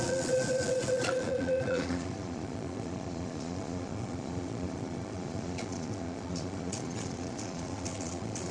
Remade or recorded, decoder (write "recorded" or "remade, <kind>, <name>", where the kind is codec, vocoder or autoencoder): remade, vocoder, Vocos